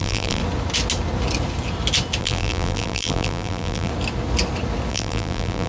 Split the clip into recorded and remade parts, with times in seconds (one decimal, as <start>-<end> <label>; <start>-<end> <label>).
0.0-0.4 remade; 0.4-2.2 recorded; 2.2-3.9 remade; 3.9-4.9 recorded; 4.9-5.7 remade